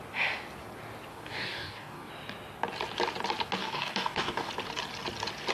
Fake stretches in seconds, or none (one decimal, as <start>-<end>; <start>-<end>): 1.1-2.1; 3.6-4.5